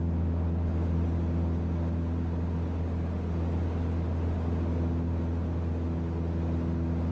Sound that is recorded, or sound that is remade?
recorded